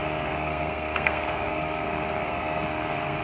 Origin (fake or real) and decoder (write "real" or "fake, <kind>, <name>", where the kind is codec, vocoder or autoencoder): fake, codec, SNAC